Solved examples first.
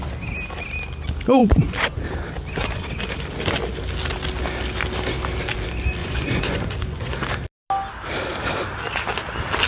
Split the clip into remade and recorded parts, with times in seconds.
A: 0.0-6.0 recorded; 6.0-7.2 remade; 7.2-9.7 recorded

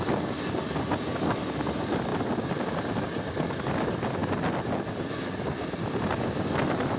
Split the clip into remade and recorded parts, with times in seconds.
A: 0.0-7.0 recorded

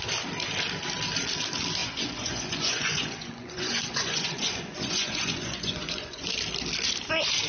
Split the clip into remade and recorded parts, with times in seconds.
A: 0.0-1.8 recorded; 1.8-6.3 remade; 6.3-7.5 recorded

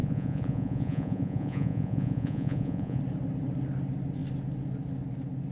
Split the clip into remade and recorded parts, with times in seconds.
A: 0.0-3.0 remade; 3.0-5.5 recorded

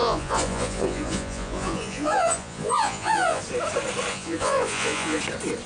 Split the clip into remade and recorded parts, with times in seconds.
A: 0.0-3.4 remade; 3.4-4.1 recorded; 4.1-5.2 remade; 5.2-5.7 recorded